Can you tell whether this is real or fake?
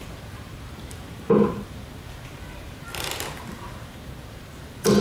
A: fake